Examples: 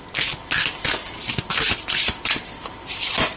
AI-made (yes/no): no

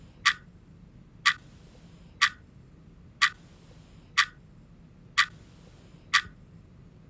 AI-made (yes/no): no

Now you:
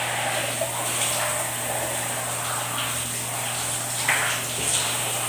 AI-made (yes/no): no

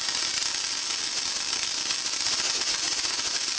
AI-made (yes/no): no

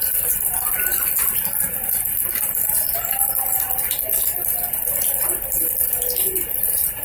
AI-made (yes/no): no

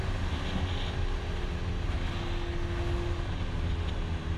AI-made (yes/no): no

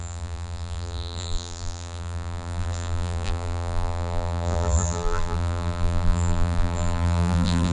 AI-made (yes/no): yes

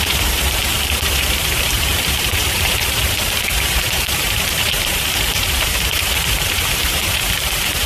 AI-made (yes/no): yes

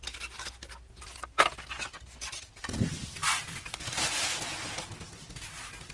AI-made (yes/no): no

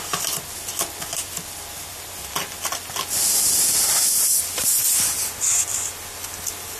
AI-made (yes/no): no